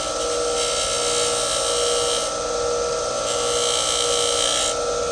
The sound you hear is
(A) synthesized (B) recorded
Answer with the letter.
B